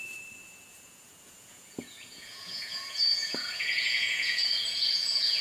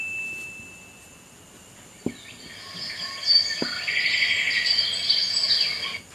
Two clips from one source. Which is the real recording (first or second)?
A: second